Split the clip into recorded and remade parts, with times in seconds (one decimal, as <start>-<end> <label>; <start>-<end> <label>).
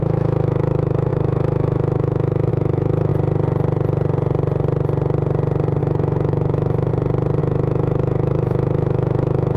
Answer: 0.0-3.1 remade; 3.1-5.8 recorded; 5.8-6.9 remade; 6.9-7.4 recorded; 7.4-9.6 remade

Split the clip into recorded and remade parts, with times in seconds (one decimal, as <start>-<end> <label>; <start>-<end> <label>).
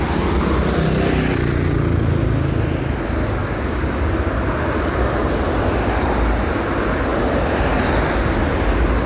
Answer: 0.0-3.4 recorded; 3.4-4.1 remade; 4.1-9.1 recorded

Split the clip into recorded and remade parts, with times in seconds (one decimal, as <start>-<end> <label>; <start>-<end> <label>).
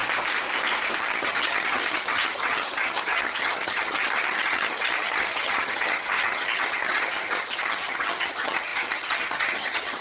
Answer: 0.0-1.0 recorded; 1.0-10.0 remade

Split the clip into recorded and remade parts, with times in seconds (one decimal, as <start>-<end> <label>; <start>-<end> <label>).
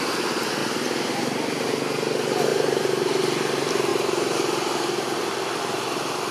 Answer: 0.0-0.6 recorded; 0.6-1.7 remade; 1.7-2.5 recorded; 2.5-3.1 remade; 3.1-3.9 recorded; 3.9-5.2 remade; 5.2-6.3 recorded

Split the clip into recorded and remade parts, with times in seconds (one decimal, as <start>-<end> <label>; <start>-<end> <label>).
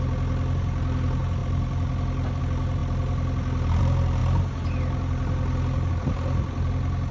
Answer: 0.0-7.1 recorded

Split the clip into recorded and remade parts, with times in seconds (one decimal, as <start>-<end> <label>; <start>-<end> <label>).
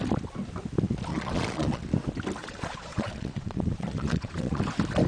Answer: 0.0-1.1 recorded; 1.1-1.8 remade; 1.8-2.4 recorded; 2.4-4.6 remade; 4.6-5.1 recorded